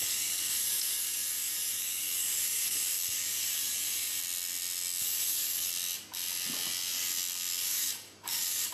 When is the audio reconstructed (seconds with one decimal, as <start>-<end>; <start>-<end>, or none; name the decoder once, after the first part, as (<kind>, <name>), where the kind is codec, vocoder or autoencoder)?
0.0-4.2 (codec, DAC); 5.0-5.7; 7.6-8.7